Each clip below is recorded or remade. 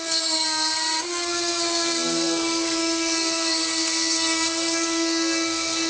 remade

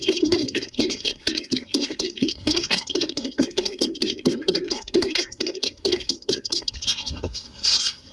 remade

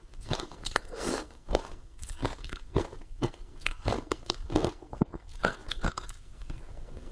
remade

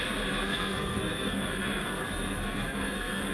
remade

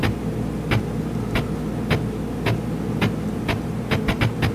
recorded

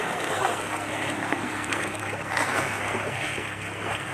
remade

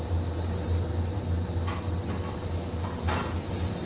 recorded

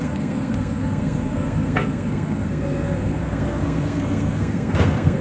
remade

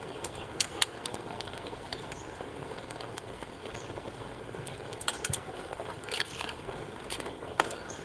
remade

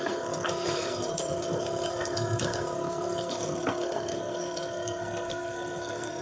remade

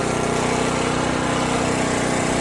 recorded